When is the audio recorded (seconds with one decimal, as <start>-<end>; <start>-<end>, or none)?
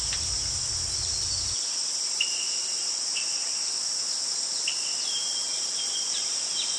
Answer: 0.0-6.8